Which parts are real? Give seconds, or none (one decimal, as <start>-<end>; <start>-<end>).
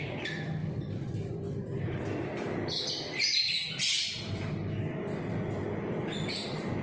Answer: 0.0-0.6; 4.7-6.8